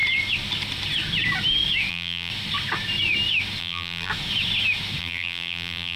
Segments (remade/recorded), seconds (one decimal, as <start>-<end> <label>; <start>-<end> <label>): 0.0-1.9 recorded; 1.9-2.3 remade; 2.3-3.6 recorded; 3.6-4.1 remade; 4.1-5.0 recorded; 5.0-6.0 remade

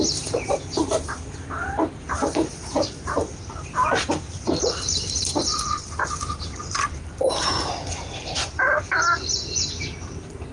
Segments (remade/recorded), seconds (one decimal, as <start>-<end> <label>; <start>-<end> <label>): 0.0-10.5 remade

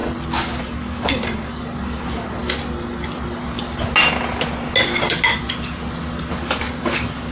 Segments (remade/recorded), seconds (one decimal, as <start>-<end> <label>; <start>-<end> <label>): 0.0-0.6 recorded; 0.6-2.4 remade; 2.4-6.3 recorded; 6.3-7.3 remade

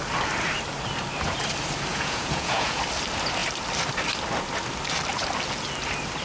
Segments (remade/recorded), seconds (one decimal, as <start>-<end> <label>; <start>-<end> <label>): 0.0-1.9 recorded; 1.9-2.8 remade; 2.8-6.2 recorded

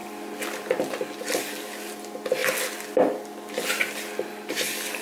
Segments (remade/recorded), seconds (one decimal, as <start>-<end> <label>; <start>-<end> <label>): 0.0-5.0 recorded

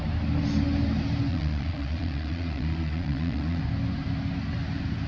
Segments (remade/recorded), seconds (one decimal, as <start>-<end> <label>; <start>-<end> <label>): 0.0-1.3 recorded; 1.3-3.6 remade; 3.6-5.1 recorded

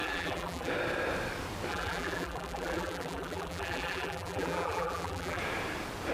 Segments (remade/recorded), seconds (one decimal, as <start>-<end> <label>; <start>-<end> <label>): 0.0-0.7 remade; 0.7-1.7 recorded; 1.7-5.4 remade; 5.4-6.1 recorded

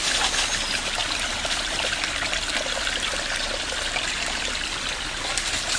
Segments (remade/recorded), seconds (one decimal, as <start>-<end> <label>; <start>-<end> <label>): 0.0-1.0 recorded; 1.0-4.5 remade; 4.5-5.8 recorded